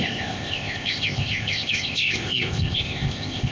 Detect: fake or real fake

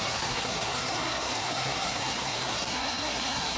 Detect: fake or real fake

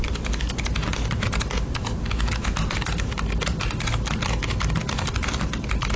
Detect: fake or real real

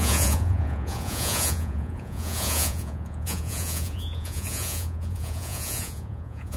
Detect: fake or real fake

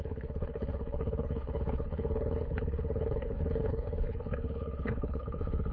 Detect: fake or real fake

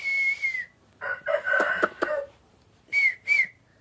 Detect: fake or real real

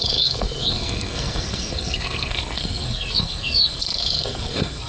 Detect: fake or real fake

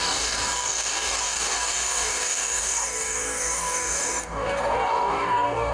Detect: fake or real fake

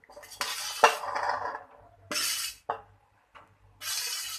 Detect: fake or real real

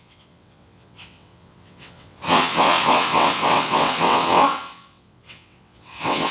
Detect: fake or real fake